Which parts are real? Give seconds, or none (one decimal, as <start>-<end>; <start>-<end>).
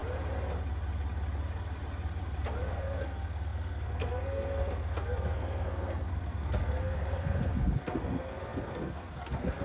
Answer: 0.0-2.7